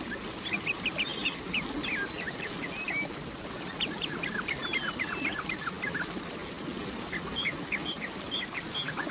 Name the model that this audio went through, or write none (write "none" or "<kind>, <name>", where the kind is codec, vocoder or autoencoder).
none